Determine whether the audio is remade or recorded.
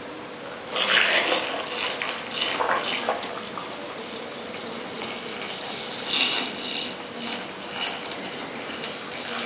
recorded